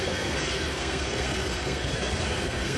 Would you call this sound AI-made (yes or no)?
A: yes